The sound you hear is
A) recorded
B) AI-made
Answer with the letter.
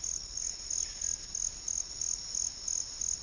A